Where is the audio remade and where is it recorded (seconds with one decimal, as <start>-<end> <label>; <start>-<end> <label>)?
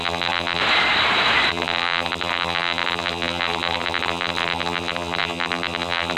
0.0-0.6 remade; 0.6-1.5 recorded; 1.5-6.2 remade